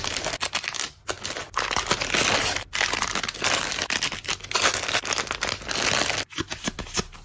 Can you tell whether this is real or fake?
real